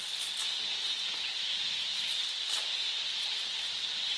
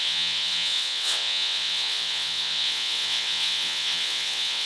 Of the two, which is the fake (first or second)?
second